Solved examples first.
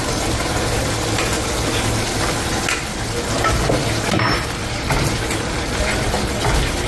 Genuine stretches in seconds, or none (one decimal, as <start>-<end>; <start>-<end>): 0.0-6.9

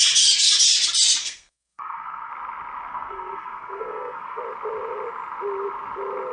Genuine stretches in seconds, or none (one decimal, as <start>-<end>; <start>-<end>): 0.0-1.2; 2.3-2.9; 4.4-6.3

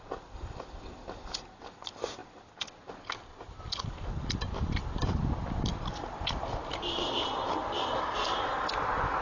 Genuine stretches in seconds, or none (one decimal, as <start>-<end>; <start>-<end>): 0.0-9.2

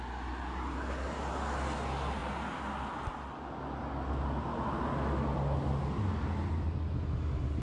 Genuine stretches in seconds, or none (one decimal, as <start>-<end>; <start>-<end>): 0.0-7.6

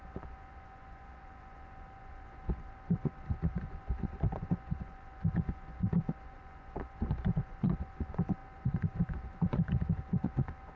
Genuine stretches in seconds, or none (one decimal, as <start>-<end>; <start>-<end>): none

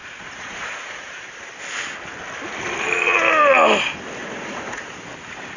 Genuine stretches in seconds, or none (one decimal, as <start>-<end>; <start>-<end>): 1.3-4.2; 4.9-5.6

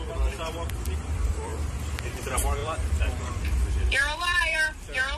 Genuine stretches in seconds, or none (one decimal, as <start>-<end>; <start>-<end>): 1.5-2.2

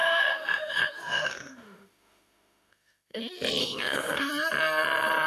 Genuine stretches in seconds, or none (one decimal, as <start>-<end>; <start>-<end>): 3.2-3.6; 4.3-5.3